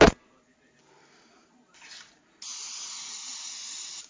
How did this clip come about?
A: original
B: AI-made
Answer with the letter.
A